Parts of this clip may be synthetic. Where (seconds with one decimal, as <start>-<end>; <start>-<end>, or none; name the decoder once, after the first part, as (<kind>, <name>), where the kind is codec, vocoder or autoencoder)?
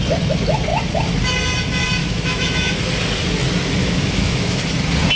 2.0-2.8 (autoencoder, DAC-VAE); 3.8-4.6